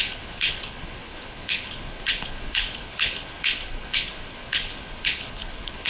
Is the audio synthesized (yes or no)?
yes